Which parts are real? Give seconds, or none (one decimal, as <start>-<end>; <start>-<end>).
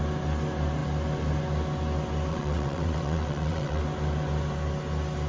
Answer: 0.0-2.3; 3.8-5.3